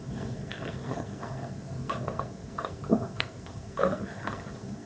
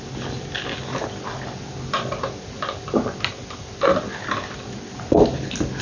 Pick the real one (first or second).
second